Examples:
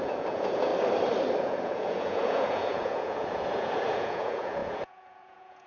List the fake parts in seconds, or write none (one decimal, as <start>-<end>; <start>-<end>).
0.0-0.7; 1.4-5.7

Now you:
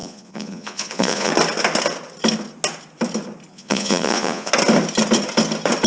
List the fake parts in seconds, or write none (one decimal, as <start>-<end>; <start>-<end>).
0.0-1.3; 3.5-4.5

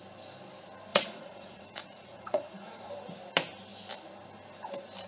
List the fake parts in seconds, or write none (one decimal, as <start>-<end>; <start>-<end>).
0.9-2.9

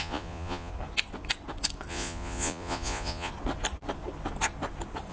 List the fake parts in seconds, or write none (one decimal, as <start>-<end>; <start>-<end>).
0.0-0.7; 1.9-3.3

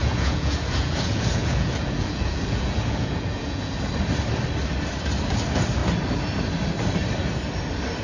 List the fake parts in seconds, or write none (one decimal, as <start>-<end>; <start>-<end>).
0.0-3.7